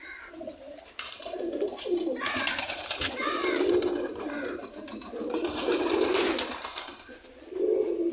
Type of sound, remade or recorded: remade